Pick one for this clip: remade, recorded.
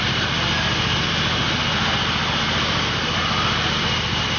recorded